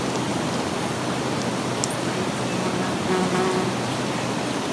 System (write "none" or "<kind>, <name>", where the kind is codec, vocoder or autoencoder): none